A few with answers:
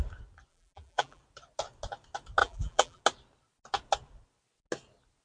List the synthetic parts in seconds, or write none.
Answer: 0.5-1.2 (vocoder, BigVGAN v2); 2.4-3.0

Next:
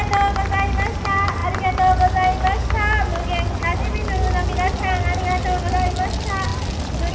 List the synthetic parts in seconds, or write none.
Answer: none

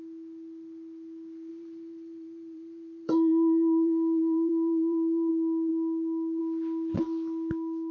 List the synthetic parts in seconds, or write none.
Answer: 1.5-5.3 (vocoder, BigVGAN v2)